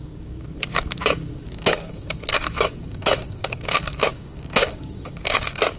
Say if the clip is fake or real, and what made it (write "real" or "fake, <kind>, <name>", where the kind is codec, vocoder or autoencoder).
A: fake, codec, DAC